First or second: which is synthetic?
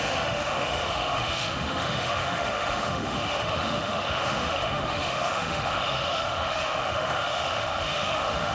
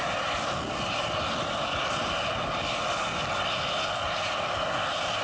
first